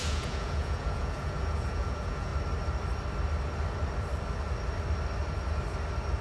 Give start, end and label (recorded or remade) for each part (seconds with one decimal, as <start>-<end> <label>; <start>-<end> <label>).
0.0-2.3 remade; 2.3-6.2 recorded